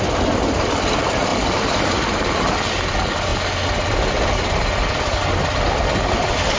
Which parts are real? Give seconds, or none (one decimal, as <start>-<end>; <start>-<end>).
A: 0.0-6.6

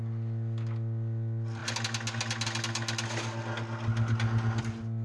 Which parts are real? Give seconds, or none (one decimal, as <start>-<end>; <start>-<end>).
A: 0.0-5.0

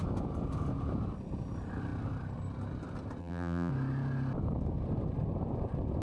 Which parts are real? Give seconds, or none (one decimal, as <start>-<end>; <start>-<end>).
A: 0.0-3.2; 3.7-6.0

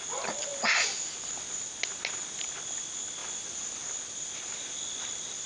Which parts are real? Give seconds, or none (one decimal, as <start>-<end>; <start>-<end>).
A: 0.0-5.5

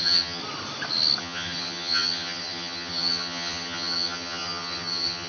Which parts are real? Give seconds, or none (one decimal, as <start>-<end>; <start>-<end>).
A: 0.4-1.2